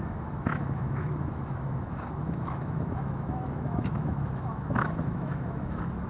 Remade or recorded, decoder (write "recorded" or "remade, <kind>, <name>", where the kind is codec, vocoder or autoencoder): remade, autoencoder, DAC-VAE